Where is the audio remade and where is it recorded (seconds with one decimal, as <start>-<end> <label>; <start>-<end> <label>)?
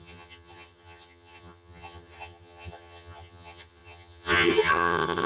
0.0-5.3 remade